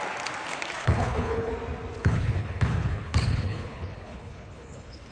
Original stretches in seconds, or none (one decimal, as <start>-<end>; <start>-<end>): 0.0-0.8; 1.5-2.0